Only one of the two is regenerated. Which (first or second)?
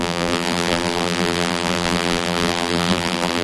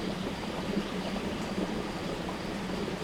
first